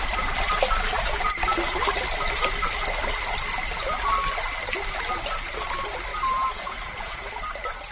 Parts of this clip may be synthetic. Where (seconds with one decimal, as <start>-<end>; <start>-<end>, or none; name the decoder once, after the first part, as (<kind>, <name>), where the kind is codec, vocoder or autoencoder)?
6.1-7.3 (vocoder, Vocos)